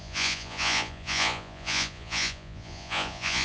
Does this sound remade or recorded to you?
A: remade